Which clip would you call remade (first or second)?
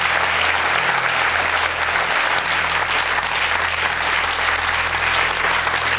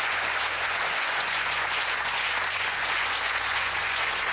second